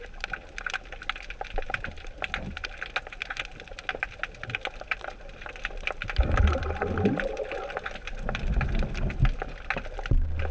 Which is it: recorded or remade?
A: recorded